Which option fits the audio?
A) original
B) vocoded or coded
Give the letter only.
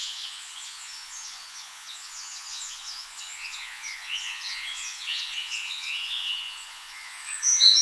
B